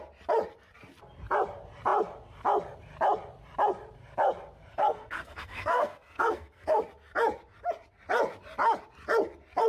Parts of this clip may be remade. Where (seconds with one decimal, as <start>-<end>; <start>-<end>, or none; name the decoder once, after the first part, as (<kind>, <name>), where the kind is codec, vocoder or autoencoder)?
4.7-6.8 (codec, SNAC)